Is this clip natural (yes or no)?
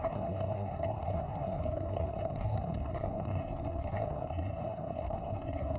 no